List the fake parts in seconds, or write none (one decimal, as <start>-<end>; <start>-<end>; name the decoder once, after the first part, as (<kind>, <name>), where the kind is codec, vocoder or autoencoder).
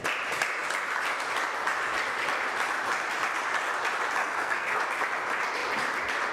4.2-4.8 (codec, SNAC)